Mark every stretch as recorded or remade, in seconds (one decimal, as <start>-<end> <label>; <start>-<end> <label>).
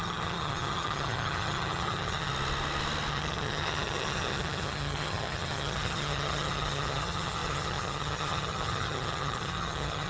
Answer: 0.0-2.3 remade; 2.3-3.1 recorded; 3.1-10.1 remade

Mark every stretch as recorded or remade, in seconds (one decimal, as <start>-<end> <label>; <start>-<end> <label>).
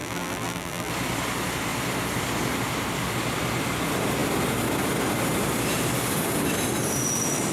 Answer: 0.0-0.9 remade; 0.9-7.5 recorded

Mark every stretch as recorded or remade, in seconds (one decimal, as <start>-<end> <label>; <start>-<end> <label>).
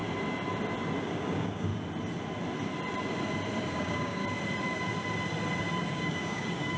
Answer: 0.0-1.0 recorded; 1.0-1.7 remade; 1.7-3.7 recorded; 3.7-4.2 remade; 4.2-5.8 recorded; 5.8-6.8 remade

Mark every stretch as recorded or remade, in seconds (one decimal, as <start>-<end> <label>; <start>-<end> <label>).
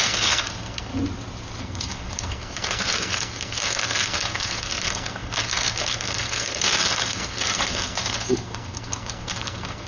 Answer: 0.0-0.9 remade; 0.9-1.6 recorded; 1.6-9.9 remade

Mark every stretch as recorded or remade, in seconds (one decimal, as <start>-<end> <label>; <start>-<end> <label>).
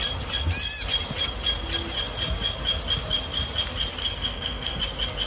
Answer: 0.0-4.0 recorded; 4.0-4.8 remade; 4.8-5.3 recorded